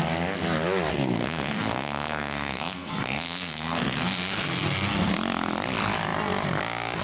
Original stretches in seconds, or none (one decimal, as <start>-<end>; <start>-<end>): 0.0-0.9; 5.1-7.0